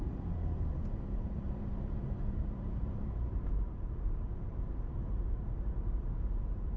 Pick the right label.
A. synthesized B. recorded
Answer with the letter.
A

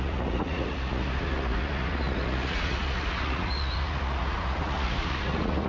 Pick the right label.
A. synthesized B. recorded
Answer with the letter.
A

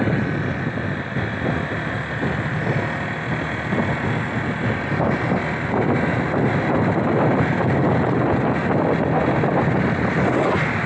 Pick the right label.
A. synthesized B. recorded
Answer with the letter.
B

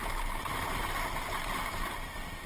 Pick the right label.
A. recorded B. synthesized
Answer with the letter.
A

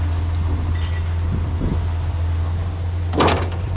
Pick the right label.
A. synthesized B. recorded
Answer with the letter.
B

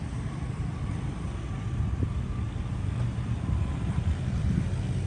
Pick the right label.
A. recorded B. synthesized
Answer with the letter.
B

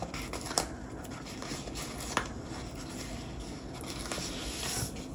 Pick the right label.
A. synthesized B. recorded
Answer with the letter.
B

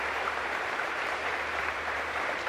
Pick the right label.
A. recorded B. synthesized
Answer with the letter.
B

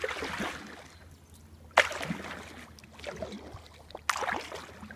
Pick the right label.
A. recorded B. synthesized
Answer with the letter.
A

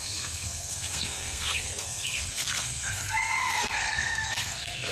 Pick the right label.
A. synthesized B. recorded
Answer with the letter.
A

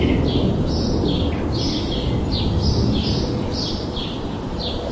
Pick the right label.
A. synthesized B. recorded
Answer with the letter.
B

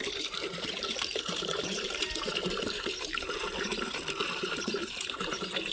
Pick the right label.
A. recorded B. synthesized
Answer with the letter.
B